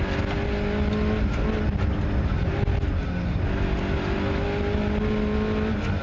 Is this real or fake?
real